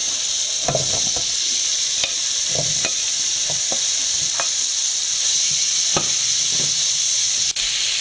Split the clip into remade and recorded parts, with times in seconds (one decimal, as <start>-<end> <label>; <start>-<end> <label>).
0.0-8.0 recorded